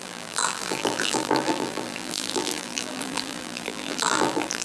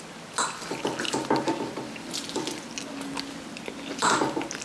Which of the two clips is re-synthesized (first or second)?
first